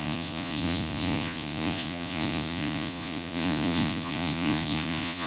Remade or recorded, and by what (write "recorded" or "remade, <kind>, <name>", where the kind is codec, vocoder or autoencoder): remade, vocoder, Vocos